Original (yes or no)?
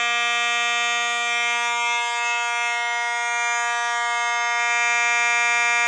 yes